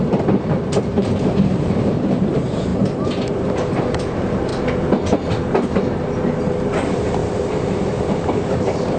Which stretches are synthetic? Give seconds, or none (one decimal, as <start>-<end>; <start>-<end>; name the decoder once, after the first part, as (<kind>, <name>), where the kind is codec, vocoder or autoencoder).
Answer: 0.0-2.7 (vocoder, BigVGAN v2); 3.3-4.5; 6.4-9.0